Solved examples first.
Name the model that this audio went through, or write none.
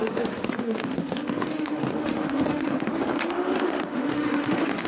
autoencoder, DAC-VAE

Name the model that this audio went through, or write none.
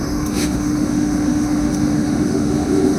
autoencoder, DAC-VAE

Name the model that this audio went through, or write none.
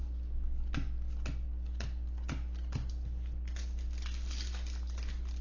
none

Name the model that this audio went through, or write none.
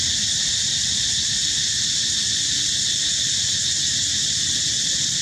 none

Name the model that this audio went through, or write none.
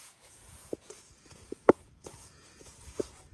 vocoder, Vocos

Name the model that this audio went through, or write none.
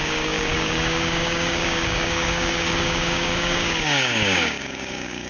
codec, DAC